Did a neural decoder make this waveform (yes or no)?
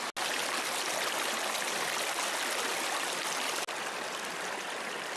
no